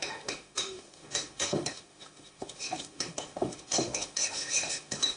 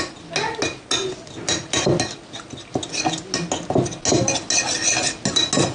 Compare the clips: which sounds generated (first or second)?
first